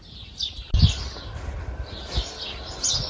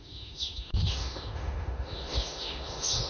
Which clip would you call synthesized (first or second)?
second